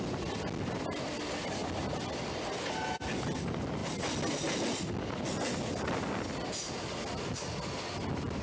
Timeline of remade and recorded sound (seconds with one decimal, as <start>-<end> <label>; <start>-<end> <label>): 0.0-8.4 recorded